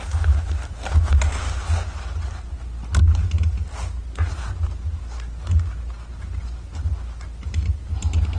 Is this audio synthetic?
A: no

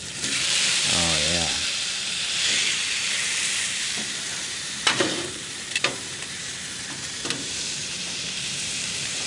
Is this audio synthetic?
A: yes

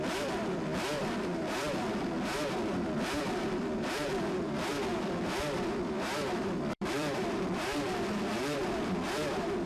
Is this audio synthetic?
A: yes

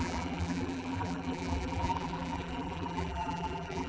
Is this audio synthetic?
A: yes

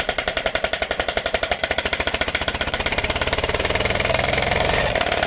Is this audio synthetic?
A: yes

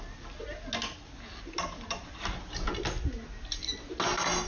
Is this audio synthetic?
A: no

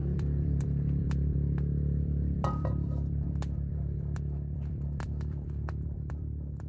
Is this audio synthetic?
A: yes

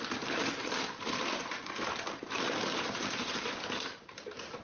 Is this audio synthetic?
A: yes